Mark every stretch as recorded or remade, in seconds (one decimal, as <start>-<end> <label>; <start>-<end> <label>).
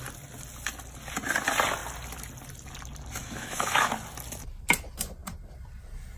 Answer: 0.0-3.2 recorded; 3.2-3.9 remade; 3.9-6.2 recorded